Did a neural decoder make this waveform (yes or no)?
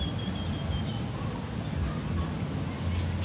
no